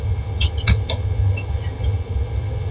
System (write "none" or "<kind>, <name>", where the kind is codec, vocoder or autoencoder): vocoder, HiFi-GAN